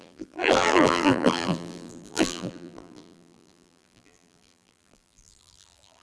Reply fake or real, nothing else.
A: fake